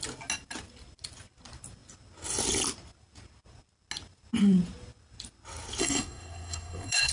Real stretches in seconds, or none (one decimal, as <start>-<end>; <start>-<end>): 0.0-5.8